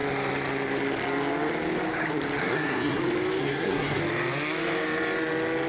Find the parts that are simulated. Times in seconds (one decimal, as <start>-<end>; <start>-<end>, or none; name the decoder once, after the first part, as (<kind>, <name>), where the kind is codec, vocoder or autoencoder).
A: 2.4-3.0 (codec, SNAC); 3.4-4.0